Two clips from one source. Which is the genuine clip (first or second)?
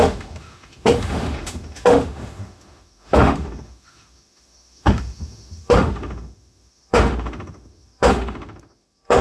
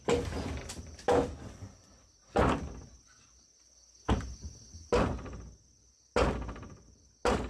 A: second